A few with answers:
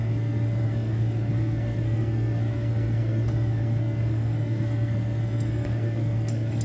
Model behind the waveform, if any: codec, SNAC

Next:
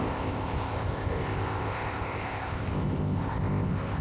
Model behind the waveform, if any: codec, ZipCodec